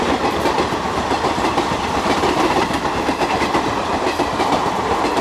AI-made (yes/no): yes